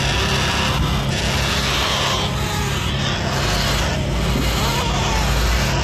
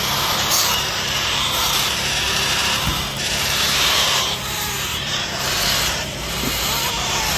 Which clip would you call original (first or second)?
first